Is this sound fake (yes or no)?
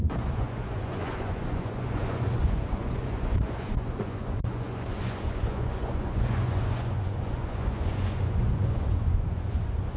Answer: yes